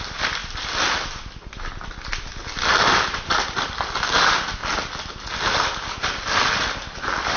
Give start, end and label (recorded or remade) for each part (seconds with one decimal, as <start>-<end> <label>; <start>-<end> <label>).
0.0-7.4 recorded